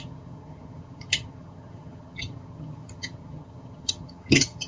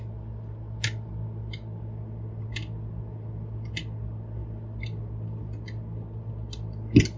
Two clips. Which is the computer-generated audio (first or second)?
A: first